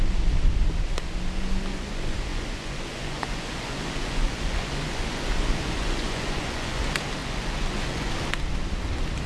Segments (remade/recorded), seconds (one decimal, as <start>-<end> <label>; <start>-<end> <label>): 0.0-1.7 recorded; 1.7-6.8 remade; 6.8-7.2 recorded; 7.2-8.1 remade; 8.1-9.3 recorded